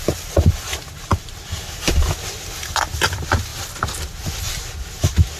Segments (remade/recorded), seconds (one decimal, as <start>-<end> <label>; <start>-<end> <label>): 0.0-1.1 recorded; 1.1-2.0 remade; 2.0-5.4 recorded

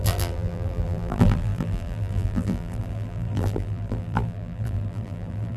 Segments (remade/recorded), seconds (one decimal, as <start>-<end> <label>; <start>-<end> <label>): 0.0-5.6 remade

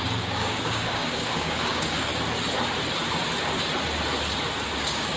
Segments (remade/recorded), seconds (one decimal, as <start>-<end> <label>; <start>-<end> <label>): 0.0-2.1 remade; 2.1-4.8 recorded; 4.8-5.2 remade

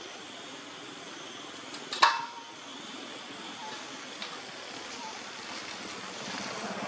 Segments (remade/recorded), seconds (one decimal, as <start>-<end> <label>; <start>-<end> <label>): 0.0-6.9 recorded

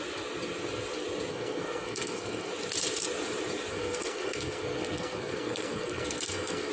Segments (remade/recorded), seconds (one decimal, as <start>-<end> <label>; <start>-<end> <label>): 0.0-1.3 recorded; 1.3-2.5 remade; 2.5-3.7 recorded; 3.7-6.7 remade

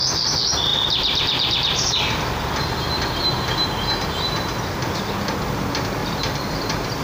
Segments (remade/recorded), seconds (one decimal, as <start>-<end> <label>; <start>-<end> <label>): 0.0-6.0 recorded; 6.0-7.0 remade

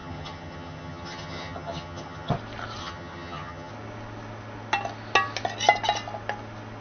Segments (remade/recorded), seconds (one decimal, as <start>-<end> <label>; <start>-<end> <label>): 0.0-2.3 remade; 2.3-2.8 recorded; 2.8-3.7 remade; 3.7-6.8 recorded

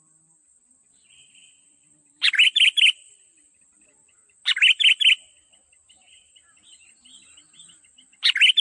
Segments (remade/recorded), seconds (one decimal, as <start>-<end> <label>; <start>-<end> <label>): 0.0-0.5 recorded; 0.5-3.6 remade; 3.6-8.6 recorded